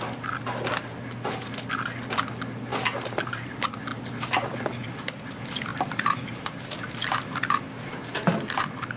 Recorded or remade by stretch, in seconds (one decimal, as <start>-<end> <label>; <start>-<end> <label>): 0.0-5.7 recorded; 5.7-6.9 remade; 6.9-9.0 recorded